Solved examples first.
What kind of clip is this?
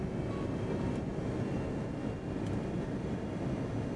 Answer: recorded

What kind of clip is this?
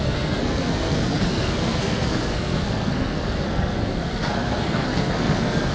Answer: remade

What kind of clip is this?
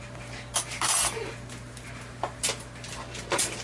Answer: recorded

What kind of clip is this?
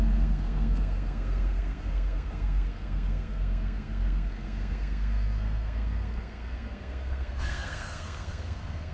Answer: remade